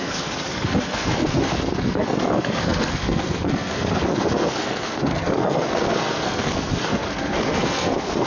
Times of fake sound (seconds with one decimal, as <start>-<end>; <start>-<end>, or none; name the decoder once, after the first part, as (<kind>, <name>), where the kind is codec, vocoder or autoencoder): 0.0-8.3 (codec, SNAC)